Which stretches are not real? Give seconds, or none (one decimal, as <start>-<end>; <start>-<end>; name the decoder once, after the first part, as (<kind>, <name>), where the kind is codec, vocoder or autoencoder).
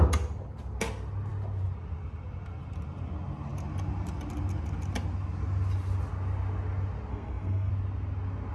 7.1-7.7 (codec, SNAC)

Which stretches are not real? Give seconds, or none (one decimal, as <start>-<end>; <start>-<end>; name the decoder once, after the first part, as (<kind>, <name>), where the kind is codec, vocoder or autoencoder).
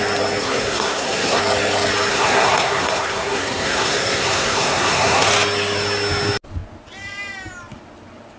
0.4-1.4 (codec, SNAC); 2.1-5.3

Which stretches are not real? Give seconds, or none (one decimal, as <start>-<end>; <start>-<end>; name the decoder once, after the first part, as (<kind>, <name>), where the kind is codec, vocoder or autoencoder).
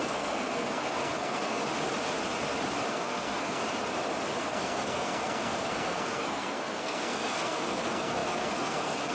0.0-1.6 (codec, SNAC); 2.9-3.6; 4.4-9.1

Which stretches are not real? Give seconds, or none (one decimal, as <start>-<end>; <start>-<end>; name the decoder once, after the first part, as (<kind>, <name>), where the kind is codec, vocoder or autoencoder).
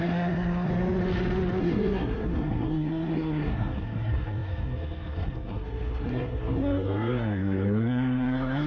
0.0-0.7 (codec, SNAC); 1.6-8.7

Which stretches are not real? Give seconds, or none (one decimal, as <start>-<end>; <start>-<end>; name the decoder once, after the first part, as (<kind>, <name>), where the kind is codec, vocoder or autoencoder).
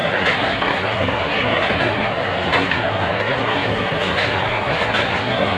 0.0-5.6 (codec, SNAC)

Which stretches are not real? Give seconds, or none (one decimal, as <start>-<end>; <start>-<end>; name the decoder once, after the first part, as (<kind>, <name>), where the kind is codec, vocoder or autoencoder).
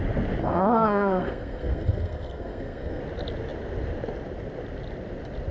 0.4-3.0 (codec, SNAC)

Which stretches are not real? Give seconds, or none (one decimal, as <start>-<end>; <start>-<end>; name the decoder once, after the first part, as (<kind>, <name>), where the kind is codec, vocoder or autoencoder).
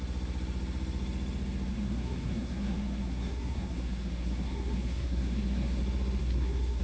1.7-5.8 (codec, SNAC); 6.2-6.8